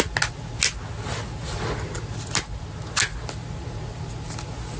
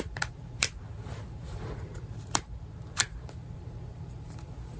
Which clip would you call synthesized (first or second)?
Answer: second